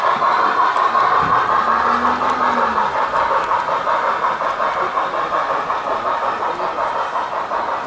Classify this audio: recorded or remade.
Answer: recorded